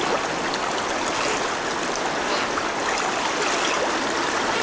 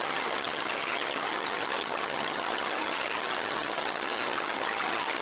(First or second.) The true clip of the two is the first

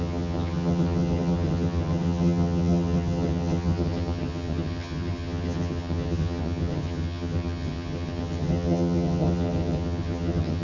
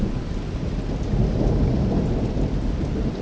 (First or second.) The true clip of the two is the second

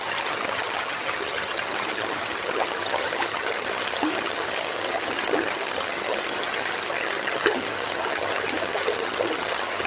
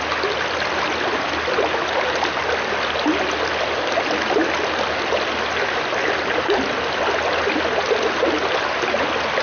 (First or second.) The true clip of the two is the second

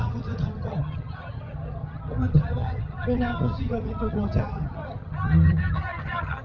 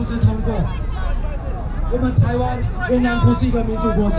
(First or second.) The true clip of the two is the second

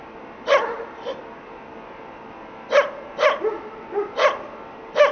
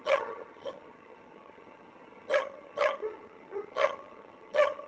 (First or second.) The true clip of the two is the first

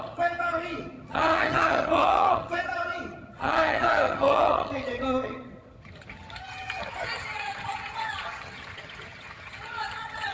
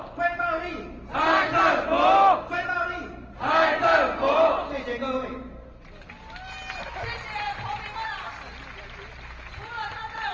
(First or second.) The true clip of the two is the second